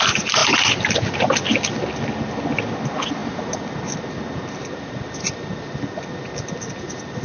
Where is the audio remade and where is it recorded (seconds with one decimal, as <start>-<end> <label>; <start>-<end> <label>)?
0.0-3.2 recorded; 3.2-5.7 remade; 5.7-7.2 recorded